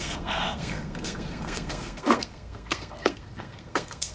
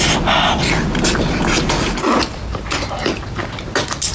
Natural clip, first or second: second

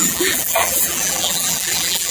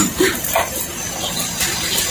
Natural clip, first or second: second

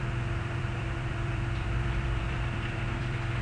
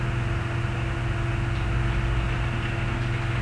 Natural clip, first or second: second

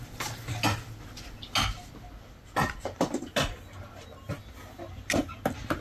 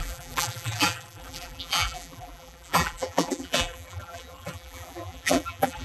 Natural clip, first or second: first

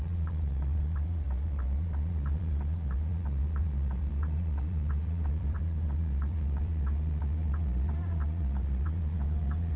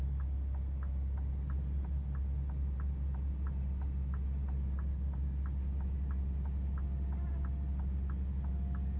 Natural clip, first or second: second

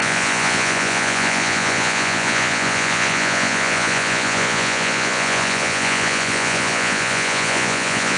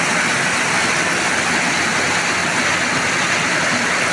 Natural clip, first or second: second